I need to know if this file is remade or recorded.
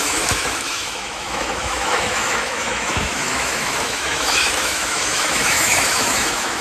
remade